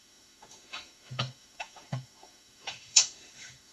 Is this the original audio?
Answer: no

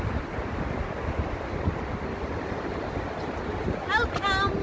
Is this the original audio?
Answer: yes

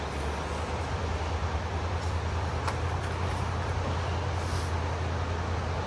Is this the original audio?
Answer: yes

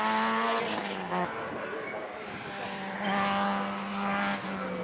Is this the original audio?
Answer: yes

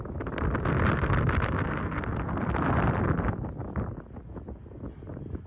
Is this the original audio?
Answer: yes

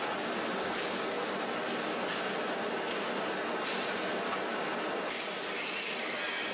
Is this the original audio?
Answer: yes